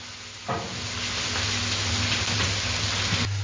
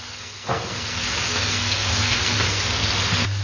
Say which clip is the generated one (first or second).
second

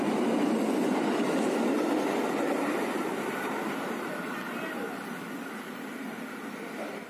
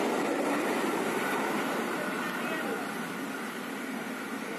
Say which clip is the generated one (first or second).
first